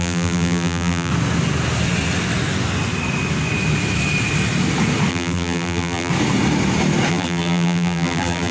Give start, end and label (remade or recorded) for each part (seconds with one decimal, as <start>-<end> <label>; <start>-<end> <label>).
0.0-1.1 remade; 1.1-5.1 recorded; 5.1-6.1 remade; 6.1-7.1 recorded; 7.1-8.5 remade